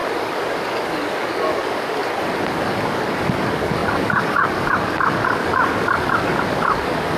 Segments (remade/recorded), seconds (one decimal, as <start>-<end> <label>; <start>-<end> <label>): 0.0-2.0 remade; 2.0-2.5 recorded; 2.5-7.2 remade